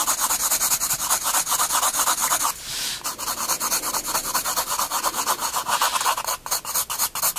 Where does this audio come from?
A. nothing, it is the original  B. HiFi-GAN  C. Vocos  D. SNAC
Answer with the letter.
A